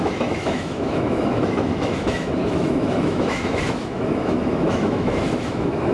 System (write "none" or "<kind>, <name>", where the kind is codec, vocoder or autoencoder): autoencoder, DAC-VAE